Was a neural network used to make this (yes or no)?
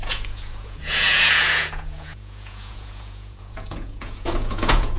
yes